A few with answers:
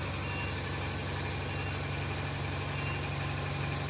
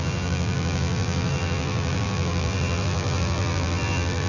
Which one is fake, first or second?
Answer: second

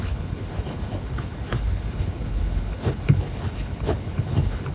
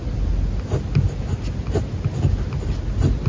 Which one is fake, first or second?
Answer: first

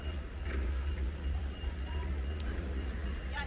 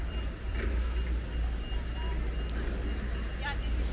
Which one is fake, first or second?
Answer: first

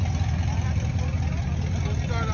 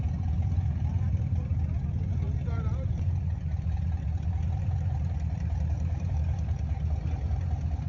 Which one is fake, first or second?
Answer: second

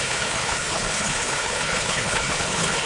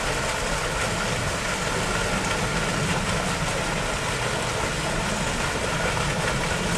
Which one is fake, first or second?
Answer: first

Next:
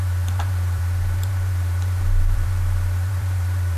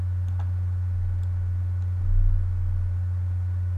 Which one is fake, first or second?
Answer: first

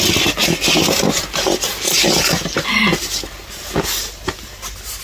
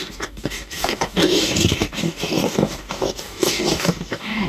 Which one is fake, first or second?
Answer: second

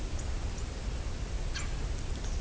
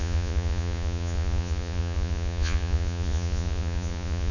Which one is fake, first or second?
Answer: second